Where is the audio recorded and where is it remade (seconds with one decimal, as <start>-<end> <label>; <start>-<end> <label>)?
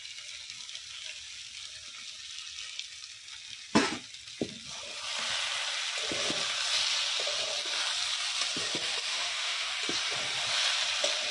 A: 0.0-9.1 recorded; 9.1-9.7 remade; 9.7-11.3 recorded